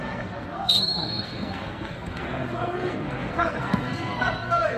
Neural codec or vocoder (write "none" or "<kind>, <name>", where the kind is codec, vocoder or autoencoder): codec, SNAC